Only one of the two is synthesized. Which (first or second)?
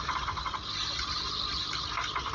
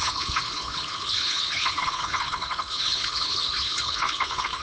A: second